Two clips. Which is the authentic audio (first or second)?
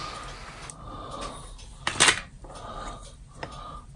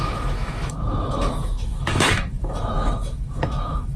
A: first